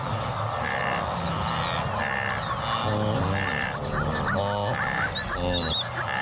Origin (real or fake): real